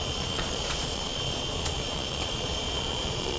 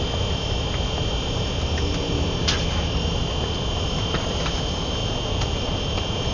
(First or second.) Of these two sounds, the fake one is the first